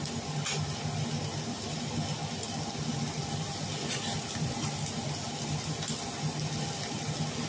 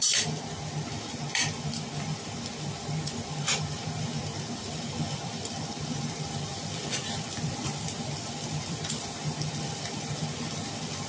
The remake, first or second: second